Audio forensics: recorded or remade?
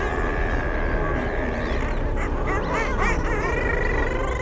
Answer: recorded